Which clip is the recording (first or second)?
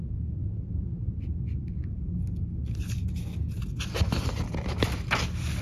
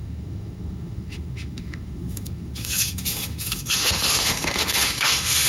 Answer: first